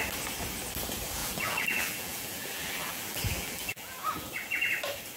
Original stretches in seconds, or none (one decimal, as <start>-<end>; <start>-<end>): 0.0-1.2; 4.3-5.2